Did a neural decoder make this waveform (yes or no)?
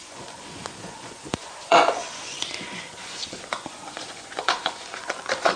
yes